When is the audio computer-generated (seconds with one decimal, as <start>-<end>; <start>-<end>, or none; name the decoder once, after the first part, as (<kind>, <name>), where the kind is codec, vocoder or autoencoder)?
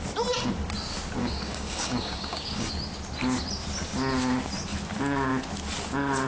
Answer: 1.2-2.7 (codec, DAC)